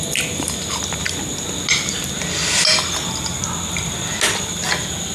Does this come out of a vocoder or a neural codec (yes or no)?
no